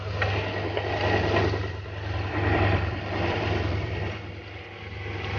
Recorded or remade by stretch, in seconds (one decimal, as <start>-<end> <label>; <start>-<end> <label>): 0.0-1.6 recorded; 1.6-4.4 remade; 4.4-5.4 recorded